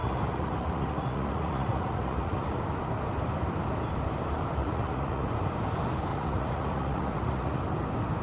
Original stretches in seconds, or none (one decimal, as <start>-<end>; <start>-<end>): 2.6-4.6; 5.3-6.1; 7.6-8.2